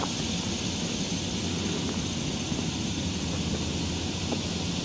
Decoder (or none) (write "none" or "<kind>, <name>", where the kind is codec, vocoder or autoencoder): none